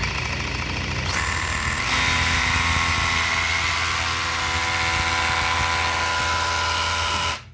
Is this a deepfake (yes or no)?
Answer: no